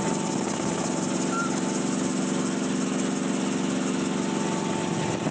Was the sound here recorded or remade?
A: recorded